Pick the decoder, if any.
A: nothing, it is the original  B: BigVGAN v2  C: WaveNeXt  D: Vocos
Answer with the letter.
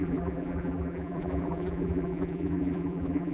B